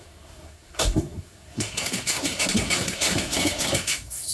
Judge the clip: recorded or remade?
remade